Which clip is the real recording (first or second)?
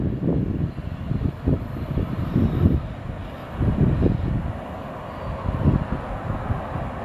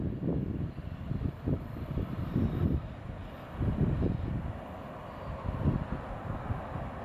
first